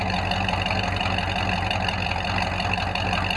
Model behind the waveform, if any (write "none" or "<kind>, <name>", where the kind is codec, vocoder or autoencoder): none